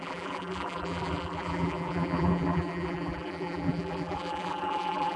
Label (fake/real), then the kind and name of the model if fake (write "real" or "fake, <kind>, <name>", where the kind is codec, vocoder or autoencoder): fake, vocoder, BigVGAN v2